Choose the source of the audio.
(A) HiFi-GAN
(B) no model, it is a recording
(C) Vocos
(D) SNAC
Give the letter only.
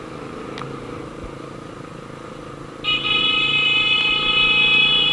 B